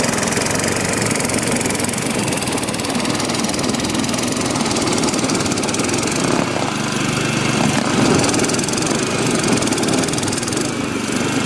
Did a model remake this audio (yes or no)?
no